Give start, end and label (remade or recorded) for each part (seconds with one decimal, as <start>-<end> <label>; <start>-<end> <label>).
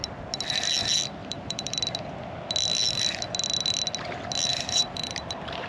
0.0-1.2 recorded; 1.2-1.8 remade; 1.8-4.5 recorded; 4.5-5.7 remade